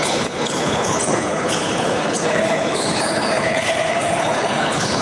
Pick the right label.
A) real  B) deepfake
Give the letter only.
B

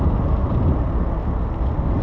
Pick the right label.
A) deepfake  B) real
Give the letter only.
B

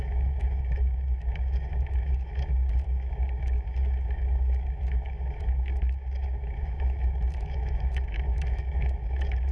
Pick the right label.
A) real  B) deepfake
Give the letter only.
B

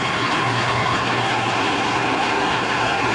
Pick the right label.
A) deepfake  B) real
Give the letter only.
A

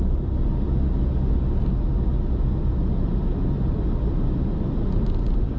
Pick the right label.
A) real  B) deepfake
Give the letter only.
A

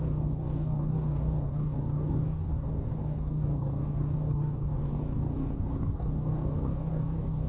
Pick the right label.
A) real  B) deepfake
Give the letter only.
B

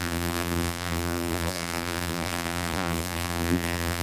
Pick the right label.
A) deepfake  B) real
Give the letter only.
A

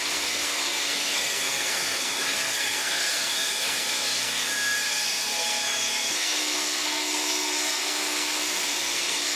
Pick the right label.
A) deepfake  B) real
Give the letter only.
A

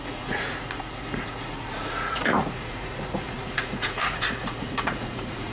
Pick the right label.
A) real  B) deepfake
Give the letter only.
B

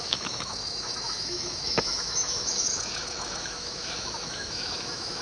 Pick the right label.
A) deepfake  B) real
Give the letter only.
A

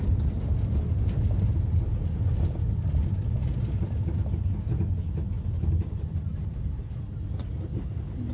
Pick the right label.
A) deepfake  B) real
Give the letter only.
B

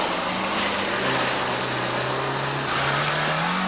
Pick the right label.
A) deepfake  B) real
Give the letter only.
B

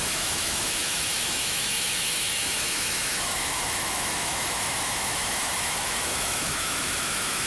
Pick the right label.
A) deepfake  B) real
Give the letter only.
A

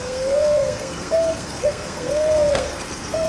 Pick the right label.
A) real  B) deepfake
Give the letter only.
B